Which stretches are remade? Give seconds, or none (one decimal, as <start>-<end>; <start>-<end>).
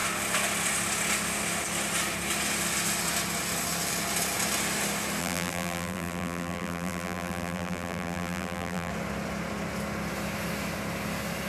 5.2-8.9